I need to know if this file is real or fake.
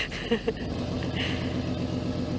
real